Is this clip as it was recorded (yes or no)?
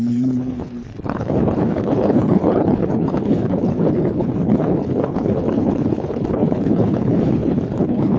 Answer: no